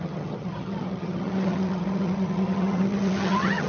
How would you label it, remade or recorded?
remade